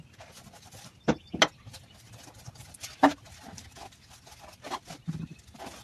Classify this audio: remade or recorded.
recorded